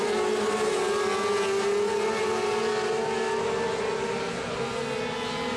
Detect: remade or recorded recorded